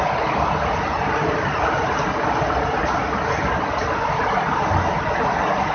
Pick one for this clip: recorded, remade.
recorded